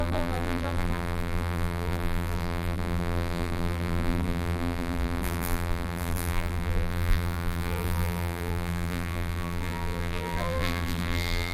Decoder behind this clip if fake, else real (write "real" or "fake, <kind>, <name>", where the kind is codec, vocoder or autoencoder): fake, vocoder, BigVGAN v2